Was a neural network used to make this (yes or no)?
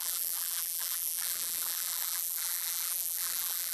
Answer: yes